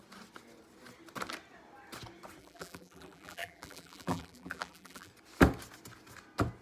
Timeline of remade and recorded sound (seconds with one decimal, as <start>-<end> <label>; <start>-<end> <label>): 0.0-2.4 recorded; 2.4-5.1 remade; 5.1-6.6 recorded